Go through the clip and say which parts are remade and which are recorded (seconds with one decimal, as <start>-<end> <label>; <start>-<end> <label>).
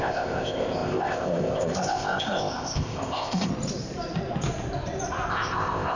0.0-3.5 remade; 3.5-5.3 recorded; 5.3-6.0 remade